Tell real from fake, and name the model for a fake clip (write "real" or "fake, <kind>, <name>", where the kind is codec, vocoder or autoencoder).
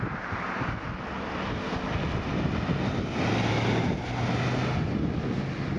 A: real